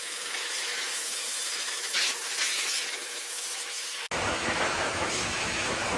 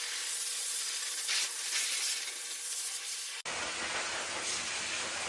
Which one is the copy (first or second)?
first